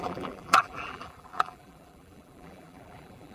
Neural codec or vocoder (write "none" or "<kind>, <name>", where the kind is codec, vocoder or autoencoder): vocoder, BigVGAN v2